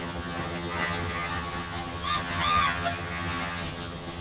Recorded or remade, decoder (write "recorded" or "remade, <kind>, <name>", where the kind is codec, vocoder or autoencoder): remade, vocoder, HiFi-GAN